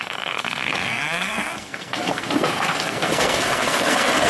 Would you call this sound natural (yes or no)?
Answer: no